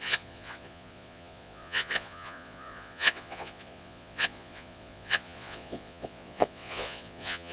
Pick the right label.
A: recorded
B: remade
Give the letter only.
B